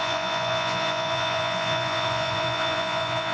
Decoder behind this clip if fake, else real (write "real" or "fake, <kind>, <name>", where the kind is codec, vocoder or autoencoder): fake, vocoder, Vocos